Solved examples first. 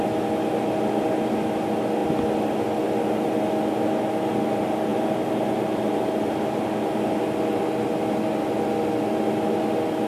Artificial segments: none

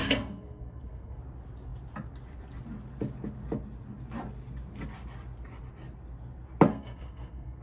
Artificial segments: 0.0-1.2 (codec, SNAC); 6.7-7.6

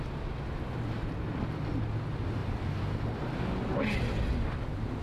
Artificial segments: 2.4-3.0 (vocoder, BigVGAN v2)

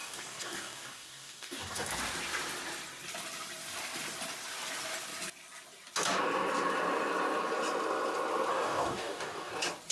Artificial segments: 0.0-1.9 (codec, DAC); 8.5-9.5

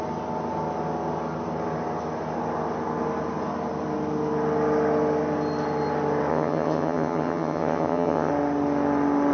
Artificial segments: 6.3-8.3 (vocoder, HiFi-GAN)

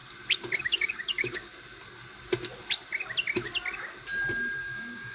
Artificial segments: 0.6-1.5 (codec, DAC); 4.6-5.1